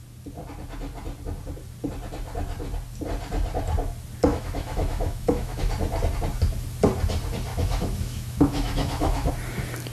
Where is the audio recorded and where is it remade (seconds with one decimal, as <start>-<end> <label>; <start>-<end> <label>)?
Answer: 0.0-4.3 recorded; 4.3-5.7 remade; 5.7-7.5 recorded; 7.5-9.3 remade; 9.3-9.9 recorded